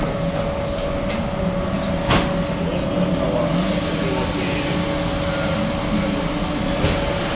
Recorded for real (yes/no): yes